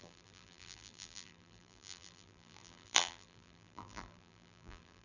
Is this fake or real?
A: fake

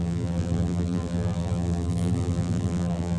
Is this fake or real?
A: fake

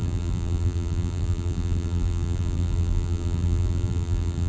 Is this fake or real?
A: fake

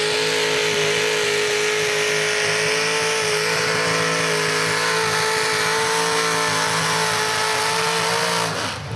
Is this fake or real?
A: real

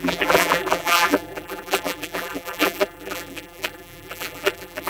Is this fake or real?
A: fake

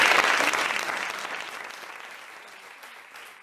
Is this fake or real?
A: fake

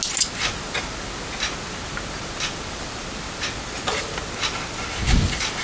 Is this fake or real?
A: real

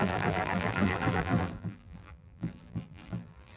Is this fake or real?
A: fake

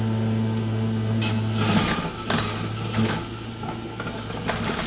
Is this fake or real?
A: real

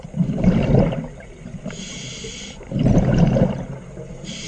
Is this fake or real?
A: real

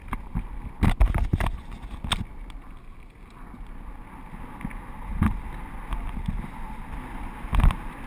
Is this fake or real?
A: real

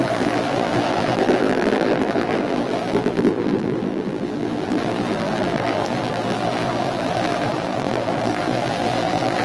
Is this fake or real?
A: fake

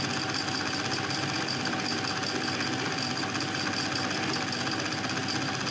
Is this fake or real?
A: real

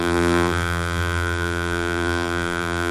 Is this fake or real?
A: fake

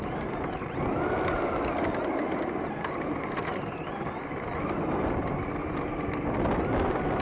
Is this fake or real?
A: real